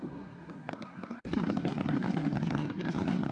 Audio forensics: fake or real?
fake